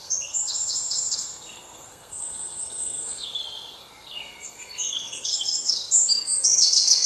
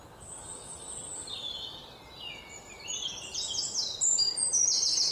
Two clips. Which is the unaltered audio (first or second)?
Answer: second